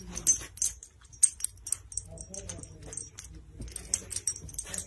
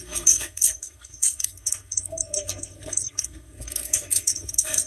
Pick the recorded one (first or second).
first